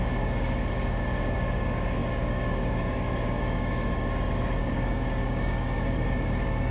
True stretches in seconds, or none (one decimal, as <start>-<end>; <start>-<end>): none